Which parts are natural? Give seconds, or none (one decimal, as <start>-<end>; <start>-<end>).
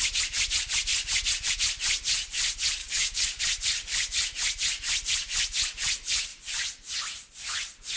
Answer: 0.0-2.8; 3.4-8.0